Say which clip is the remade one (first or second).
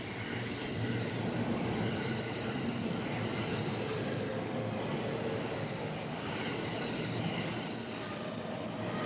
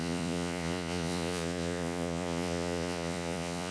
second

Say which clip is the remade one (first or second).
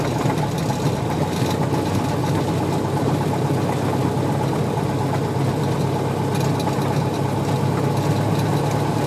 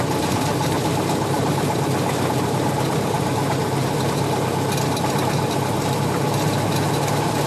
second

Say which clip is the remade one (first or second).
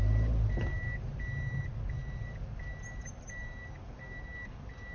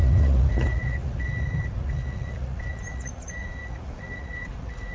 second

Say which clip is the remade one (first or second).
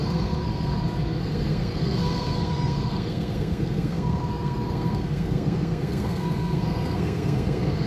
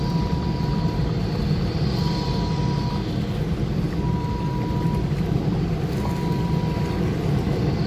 first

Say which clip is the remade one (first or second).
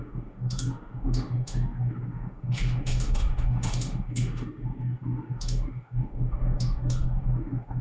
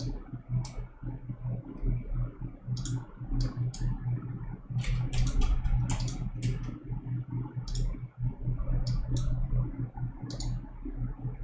first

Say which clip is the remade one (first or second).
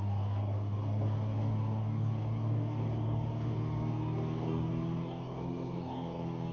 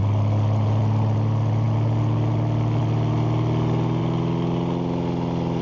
first